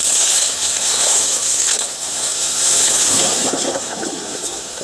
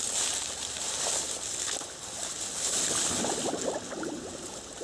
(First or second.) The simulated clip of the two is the first